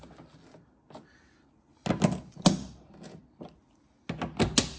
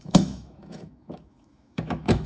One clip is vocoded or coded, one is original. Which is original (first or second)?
first